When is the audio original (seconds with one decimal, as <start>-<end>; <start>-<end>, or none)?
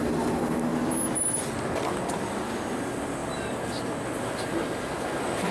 0.0-0.7; 2.7-5.5